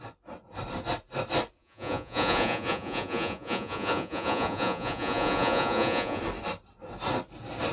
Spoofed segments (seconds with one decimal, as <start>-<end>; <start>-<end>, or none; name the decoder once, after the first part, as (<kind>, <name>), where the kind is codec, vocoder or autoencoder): 1.6-6.2 (vocoder, Vocos)